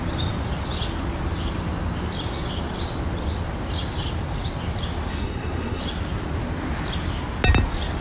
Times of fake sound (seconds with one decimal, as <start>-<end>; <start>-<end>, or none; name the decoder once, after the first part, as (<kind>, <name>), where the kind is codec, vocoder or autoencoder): 5.1-5.8 (codec, SNAC)